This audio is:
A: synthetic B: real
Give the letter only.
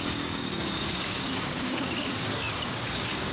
A